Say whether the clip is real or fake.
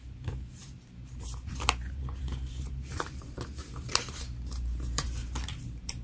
fake